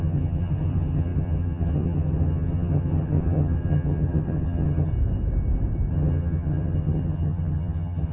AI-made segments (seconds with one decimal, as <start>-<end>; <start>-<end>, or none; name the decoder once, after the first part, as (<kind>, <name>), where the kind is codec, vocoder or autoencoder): 0.0-4.9 (vocoder, HiFi-GAN); 5.9-8.1

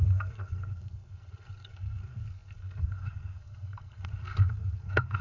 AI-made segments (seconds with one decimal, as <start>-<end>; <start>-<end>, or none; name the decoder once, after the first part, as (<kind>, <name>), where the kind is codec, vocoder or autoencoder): 0.0-5.2 (codec, SNAC)

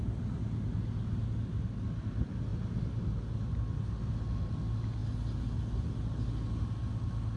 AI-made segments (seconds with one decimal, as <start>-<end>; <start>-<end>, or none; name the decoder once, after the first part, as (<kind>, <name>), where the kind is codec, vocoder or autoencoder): none

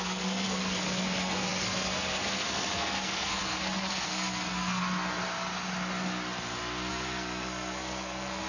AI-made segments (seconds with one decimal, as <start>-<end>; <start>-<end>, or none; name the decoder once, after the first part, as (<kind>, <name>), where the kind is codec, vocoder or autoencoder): 0.0-4.8 (codec, SNAC); 6.9-8.5